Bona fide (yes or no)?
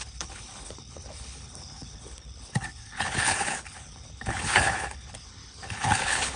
no